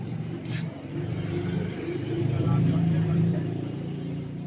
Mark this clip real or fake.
fake